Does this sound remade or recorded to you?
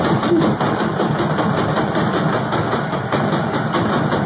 recorded